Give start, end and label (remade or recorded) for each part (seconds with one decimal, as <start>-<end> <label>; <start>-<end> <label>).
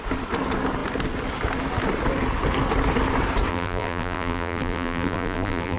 0.0-3.5 recorded; 3.5-5.8 remade